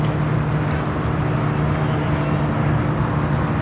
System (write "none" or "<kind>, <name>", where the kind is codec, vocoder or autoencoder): none